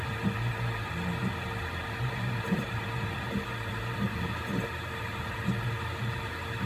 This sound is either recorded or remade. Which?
recorded